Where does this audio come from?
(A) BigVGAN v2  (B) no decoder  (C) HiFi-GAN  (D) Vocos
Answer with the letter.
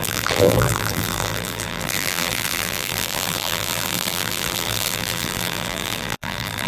A